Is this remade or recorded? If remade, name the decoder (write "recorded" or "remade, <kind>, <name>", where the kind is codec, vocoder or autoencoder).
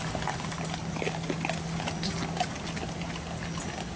recorded